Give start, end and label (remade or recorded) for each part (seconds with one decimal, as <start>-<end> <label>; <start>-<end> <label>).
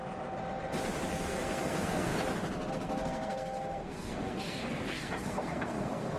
0.0-1.1 recorded; 1.1-2.1 remade; 2.1-2.7 recorded; 2.7-6.2 remade